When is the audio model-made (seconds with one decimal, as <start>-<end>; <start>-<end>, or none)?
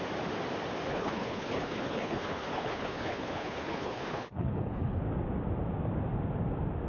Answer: 0.9-5.0